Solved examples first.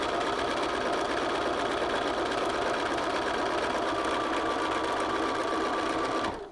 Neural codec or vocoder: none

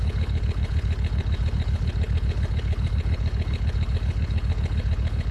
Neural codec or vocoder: codec, HILCodec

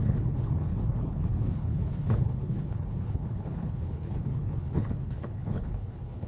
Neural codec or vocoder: codec, HILCodec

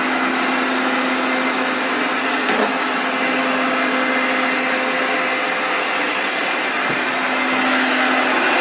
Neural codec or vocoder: none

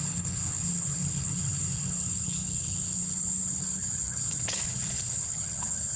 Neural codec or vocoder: codec, HILCodec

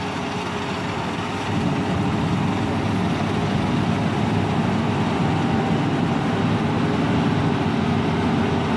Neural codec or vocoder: none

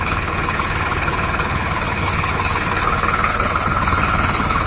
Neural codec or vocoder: codec, HILCodec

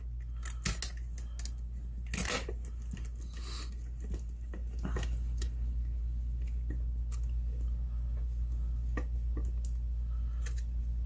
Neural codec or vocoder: none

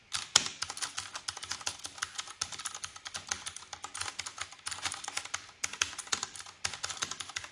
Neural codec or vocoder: none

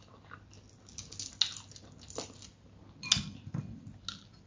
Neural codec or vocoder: none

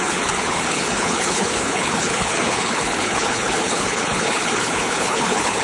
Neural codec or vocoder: codec, HILCodec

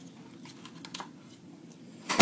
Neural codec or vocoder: none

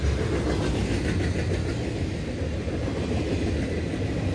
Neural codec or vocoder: none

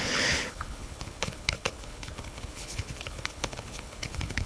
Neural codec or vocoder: codec, HILCodec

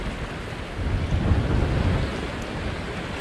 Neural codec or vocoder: none